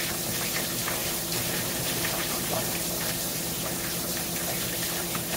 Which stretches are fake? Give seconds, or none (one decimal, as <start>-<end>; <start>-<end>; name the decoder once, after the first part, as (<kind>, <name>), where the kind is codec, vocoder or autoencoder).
1.0-4.2 (vocoder, BigVGAN v2)